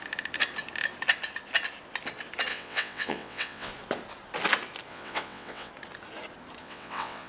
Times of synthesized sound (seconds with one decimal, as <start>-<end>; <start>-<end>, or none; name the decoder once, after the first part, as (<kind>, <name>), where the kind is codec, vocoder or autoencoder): 2.5-3.7 (vocoder, WaveNeXt); 4.9-5.7; 6.6-7.3